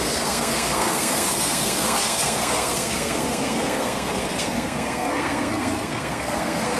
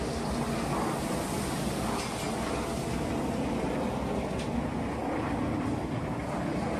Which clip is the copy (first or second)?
first